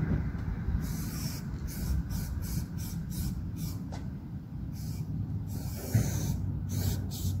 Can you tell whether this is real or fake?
real